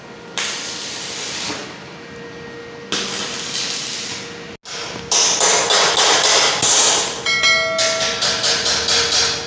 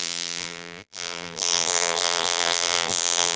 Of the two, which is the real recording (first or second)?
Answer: first